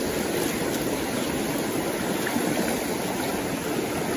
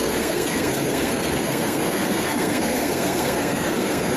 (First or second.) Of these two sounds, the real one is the first